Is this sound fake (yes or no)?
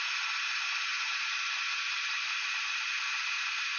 no